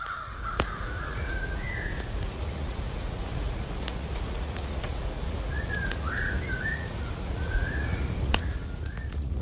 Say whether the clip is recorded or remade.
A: remade